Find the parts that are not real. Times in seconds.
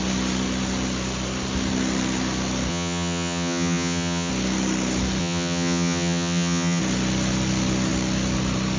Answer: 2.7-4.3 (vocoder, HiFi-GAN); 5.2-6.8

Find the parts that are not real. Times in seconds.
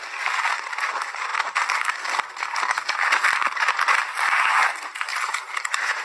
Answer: none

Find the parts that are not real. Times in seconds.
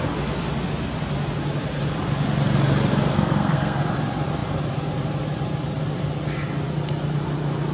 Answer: 3.1-3.8 (codec, SNAC)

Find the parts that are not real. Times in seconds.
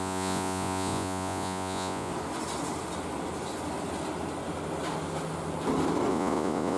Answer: 0.0-2.1 (vocoder, Vocos); 6.1-6.8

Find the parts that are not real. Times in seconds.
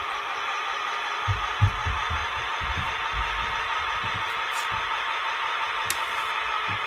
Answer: none